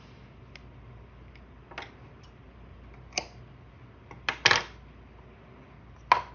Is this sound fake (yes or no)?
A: no